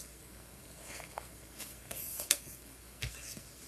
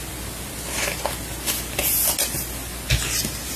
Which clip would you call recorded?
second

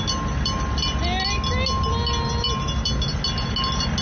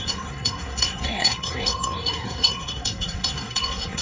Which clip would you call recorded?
first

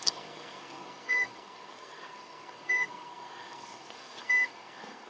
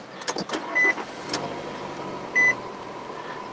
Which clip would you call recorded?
second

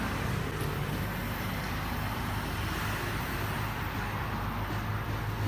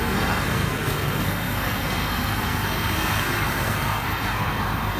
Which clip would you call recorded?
first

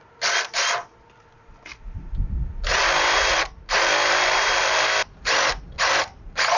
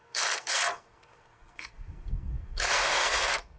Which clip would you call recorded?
first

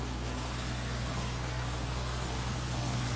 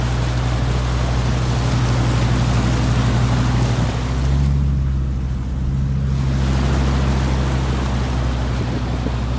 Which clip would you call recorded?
second